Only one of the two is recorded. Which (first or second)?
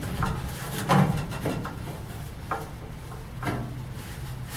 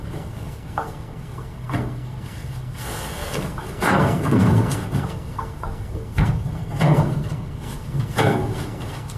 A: first